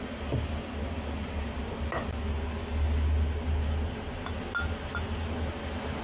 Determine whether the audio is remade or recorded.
recorded